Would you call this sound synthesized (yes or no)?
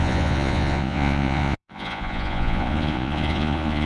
yes